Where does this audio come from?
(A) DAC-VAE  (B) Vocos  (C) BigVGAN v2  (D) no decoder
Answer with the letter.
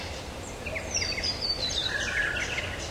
D